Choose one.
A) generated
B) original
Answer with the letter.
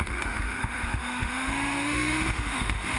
A